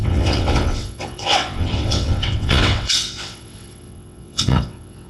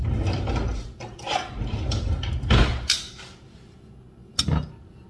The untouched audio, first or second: second